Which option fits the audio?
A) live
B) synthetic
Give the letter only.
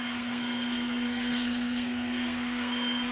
B